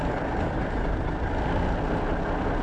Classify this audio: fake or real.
real